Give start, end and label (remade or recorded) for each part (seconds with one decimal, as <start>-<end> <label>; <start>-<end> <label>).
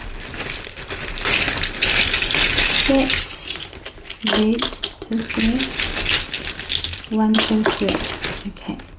0.0-0.9 remade; 0.9-9.0 recorded